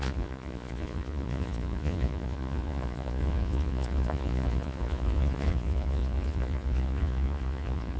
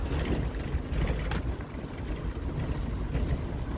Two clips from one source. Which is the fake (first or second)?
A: first